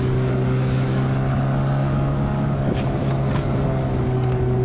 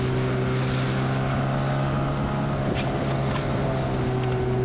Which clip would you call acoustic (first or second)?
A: second